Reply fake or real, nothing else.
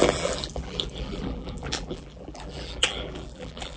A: fake